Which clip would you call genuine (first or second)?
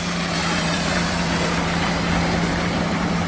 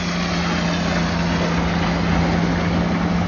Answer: second